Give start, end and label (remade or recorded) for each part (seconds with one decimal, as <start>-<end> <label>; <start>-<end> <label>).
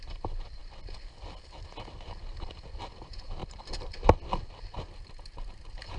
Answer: 0.0-0.6 remade; 0.6-3.0 recorded; 3.0-3.4 remade; 3.4-5.2 recorded; 5.2-6.0 remade